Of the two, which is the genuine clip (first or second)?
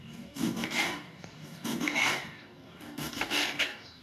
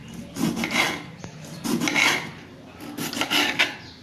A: second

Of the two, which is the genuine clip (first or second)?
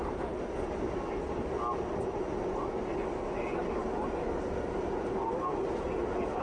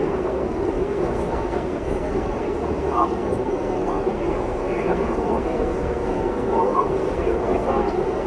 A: first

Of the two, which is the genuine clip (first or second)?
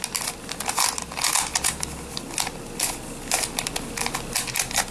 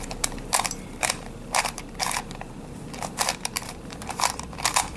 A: first